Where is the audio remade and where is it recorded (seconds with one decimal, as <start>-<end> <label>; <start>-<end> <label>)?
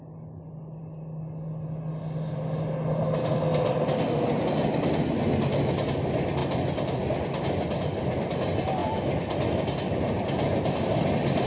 0.0-6.4 recorded; 6.4-7.0 remade; 7.0-8.8 recorded; 8.8-11.5 remade